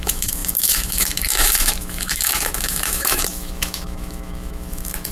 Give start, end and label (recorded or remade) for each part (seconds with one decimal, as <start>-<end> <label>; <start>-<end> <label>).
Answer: 0.0-5.1 remade